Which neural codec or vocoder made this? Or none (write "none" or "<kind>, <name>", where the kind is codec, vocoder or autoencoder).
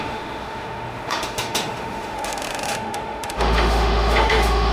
autoencoder, DAC-VAE